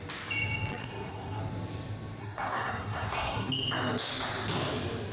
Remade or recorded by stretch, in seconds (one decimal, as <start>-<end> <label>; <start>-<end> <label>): 0.0-0.8 recorded; 0.8-1.4 remade; 1.4-2.2 recorded; 2.2-3.5 remade; 3.5-5.1 recorded